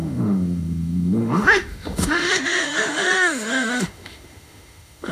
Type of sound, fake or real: fake